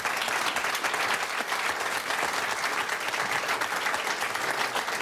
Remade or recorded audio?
recorded